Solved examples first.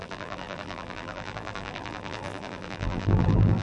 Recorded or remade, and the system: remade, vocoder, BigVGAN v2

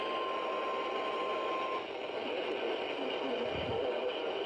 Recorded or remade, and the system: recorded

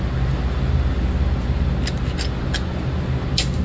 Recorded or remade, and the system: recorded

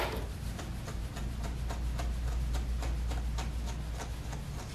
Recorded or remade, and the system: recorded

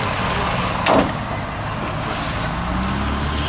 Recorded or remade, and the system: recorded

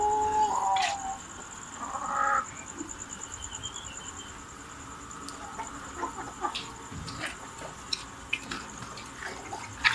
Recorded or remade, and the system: recorded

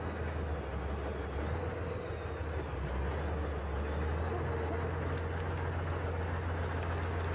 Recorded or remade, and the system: recorded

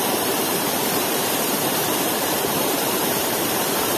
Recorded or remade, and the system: remade, vocoder, BigVGAN v2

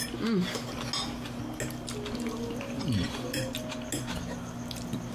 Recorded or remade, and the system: recorded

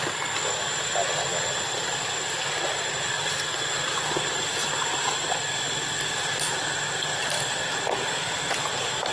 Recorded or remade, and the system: recorded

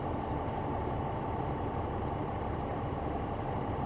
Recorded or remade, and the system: remade, vocoder, BigVGAN v2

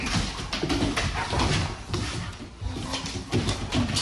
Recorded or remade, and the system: recorded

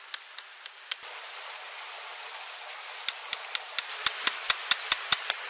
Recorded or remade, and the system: recorded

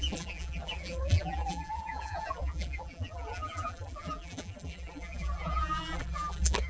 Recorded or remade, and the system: remade, vocoder, BigVGAN v2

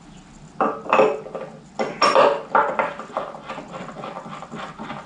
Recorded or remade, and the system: recorded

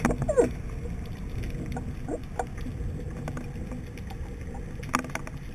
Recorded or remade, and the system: recorded